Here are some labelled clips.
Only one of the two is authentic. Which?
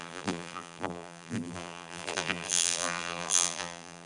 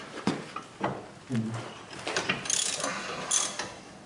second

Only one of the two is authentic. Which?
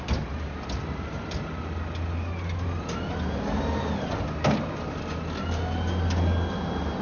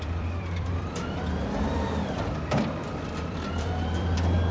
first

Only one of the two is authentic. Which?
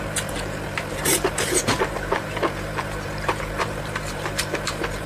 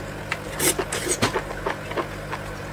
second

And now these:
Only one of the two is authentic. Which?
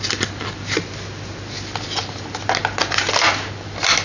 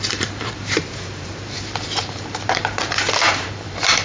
first